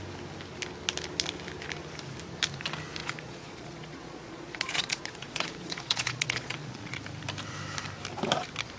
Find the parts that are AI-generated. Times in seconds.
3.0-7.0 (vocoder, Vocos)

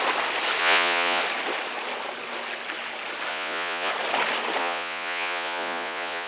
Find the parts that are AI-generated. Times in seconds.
0.6-1.2 (vocoder, Vocos); 3.3-3.9; 4.6-6.3